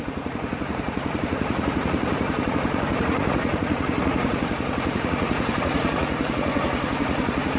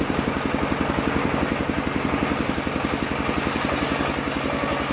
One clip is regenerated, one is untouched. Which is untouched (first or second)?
second